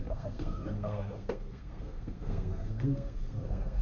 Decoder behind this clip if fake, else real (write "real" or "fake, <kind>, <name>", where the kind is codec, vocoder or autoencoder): fake, codec, SNAC